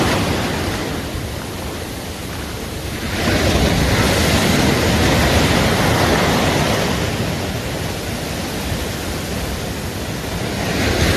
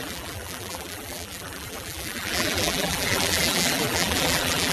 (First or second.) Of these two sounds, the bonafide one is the first